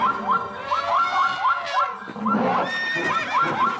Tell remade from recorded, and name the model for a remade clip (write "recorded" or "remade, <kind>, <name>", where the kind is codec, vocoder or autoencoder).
recorded